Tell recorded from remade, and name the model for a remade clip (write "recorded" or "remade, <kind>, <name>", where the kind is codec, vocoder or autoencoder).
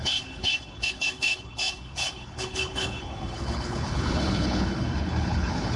remade, codec, HILCodec